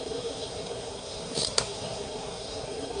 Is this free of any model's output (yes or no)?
no